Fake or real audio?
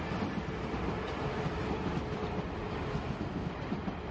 real